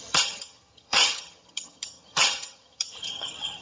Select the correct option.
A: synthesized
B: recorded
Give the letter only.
A